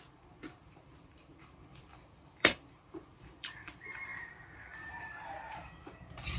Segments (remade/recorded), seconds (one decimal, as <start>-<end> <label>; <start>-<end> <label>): 0.0-6.4 remade